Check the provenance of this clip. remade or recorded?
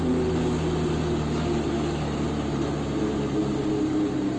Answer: recorded